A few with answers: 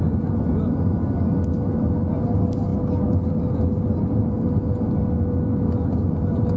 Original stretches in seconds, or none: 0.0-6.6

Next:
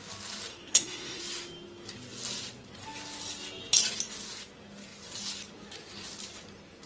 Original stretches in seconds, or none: 0.0-0.5; 1.2-6.9

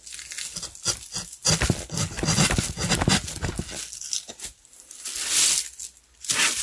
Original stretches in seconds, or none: 0.0-6.6

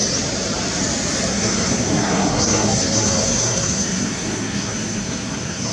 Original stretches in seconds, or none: 0.0-1.3

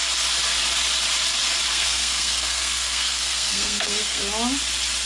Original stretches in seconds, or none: 0.0-1.7; 4.2-5.1